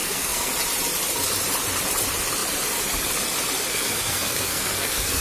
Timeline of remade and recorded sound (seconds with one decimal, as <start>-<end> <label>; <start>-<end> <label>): 0.0-0.5 remade; 0.5-3.7 recorded; 3.7-5.2 remade